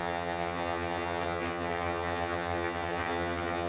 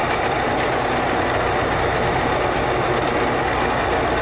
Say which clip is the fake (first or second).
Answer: first